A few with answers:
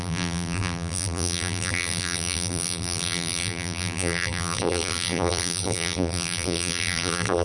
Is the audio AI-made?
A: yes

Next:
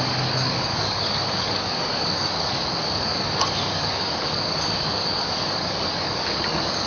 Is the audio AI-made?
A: yes